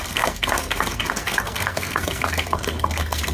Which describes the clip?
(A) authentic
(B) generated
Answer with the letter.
B